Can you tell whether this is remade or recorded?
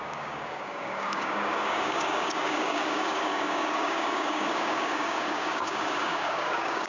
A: remade